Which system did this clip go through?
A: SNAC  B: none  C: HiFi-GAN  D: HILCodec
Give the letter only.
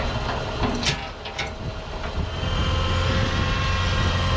B